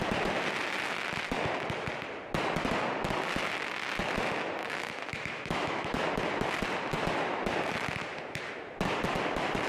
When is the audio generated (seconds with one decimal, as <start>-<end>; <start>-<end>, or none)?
4.6-6.1

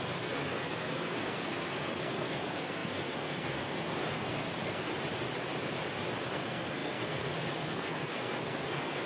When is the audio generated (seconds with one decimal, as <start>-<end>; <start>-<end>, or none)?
0.0-4.9; 6.3-9.1

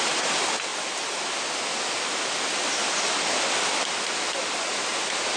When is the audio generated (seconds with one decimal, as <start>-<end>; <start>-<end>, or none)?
none

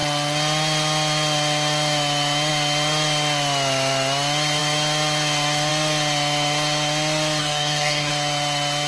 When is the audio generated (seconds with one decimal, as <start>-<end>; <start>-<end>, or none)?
7.4-8.1

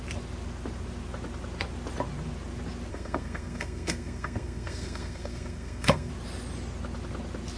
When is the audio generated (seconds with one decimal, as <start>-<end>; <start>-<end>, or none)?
2.9-6.1

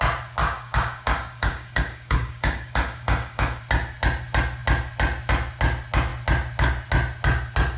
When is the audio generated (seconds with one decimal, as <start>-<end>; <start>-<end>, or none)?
0.4-3.6

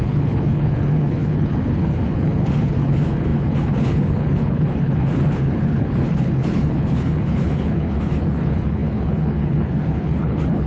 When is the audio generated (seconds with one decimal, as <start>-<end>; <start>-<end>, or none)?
0.0-10.7

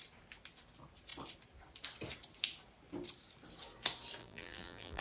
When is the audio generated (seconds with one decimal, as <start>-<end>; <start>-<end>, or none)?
4.2-5.0